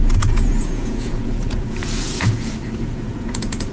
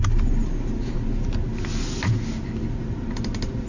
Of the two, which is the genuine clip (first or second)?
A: second